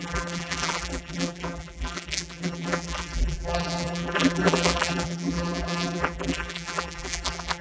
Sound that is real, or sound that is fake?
fake